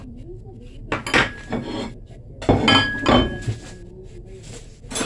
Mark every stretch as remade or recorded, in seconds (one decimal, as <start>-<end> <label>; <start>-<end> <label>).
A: 0.0-5.1 recorded